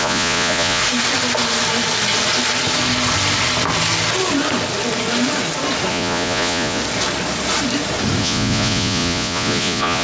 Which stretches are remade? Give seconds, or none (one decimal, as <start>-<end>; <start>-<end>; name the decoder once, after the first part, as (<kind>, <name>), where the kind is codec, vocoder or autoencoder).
0.0-0.8 (vocoder, Vocos); 5.9-6.8; 8.2-10.0